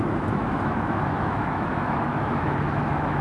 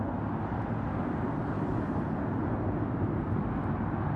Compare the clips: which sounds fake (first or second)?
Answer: first